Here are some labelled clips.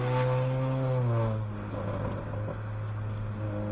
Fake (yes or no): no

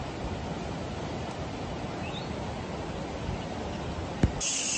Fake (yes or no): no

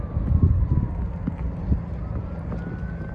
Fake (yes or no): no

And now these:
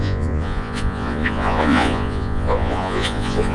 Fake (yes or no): yes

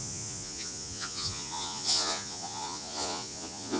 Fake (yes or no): yes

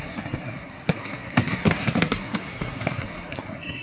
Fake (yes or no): yes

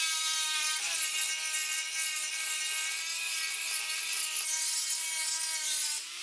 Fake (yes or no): no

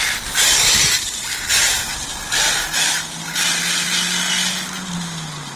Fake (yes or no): no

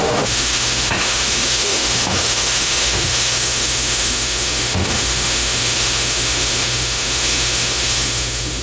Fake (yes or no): yes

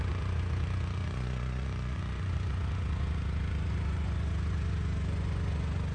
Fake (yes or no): yes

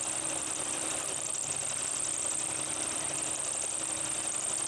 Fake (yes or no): no